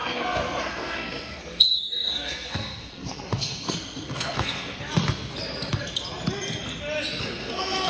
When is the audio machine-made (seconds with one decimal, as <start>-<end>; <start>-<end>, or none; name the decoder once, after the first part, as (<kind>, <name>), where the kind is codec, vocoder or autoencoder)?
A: 0.0-4.9 (codec, SNAC); 7.2-7.9